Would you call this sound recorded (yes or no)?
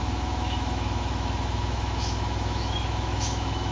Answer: no